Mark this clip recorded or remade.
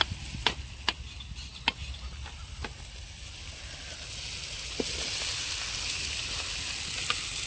recorded